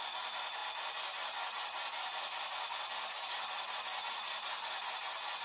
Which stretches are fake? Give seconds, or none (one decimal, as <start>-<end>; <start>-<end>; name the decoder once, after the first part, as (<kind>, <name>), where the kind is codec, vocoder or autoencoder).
none